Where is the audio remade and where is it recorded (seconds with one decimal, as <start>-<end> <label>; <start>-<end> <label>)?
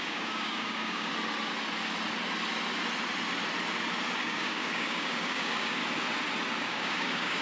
0.0-1.1 remade; 1.1-4.2 recorded; 4.2-5.8 remade; 5.8-6.6 recorded; 6.6-7.4 remade